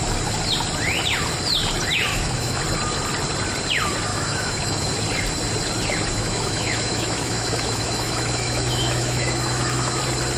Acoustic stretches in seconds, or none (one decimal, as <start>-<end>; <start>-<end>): 0.0-2.1; 2.6-4.1; 4.9-6.1; 10.0-10.4